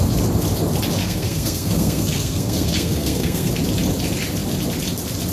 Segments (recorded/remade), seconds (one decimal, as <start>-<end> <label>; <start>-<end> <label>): 0.0-1.0 recorded; 1.0-3.5 remade; 3.5-5.3 recorded